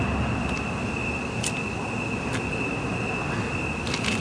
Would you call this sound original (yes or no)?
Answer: yes